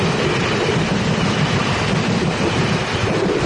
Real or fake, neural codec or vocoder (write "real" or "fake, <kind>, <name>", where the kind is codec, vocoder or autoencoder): real